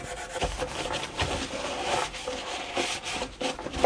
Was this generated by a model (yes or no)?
no